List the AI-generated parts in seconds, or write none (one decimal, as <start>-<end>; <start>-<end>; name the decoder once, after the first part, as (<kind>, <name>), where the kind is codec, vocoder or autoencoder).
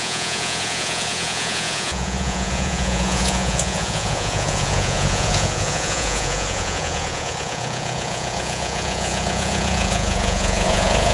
0.0-11.1 (vocoder, Vocos)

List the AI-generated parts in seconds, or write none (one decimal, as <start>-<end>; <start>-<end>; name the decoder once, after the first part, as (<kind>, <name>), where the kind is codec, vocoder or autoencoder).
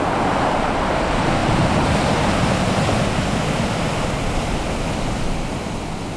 1.4-2.7 (vocoder, BigVGAN v2)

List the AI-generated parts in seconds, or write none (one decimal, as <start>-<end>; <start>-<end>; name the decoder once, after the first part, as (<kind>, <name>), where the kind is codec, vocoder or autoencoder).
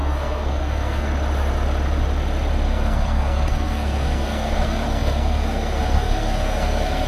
0.0-1.1 (codec, SNAC); 2.7-7.1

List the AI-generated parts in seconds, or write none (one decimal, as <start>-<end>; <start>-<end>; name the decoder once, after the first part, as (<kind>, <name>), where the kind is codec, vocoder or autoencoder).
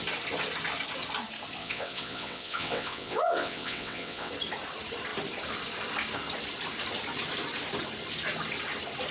1.6-4.3 (vocoder, WaveNeXt)